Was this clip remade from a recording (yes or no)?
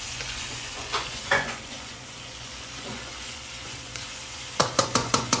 yes